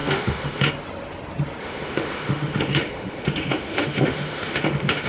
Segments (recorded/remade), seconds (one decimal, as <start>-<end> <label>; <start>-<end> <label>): 0.0-0.7 remade; 0.7-1.6 recorded; 1.6-5.1 remade